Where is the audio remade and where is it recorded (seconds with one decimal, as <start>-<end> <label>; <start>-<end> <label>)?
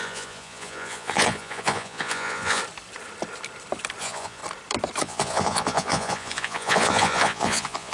0.0-2.6 remade; 2.6-4.0 recorded; 4.0-4.4 remade; 4.4-5.0 recorded; 5.0-7.9 remade